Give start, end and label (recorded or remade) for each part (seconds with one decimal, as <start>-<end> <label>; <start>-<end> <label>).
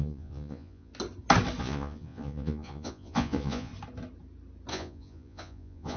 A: 0.0-0.9 remade; 0.9-1.6 recorded; 1.6-3.7 remade; 3.7-4.7 recorded; 4.7-6.0 remade